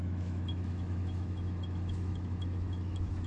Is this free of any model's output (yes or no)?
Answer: no